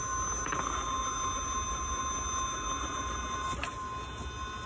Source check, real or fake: real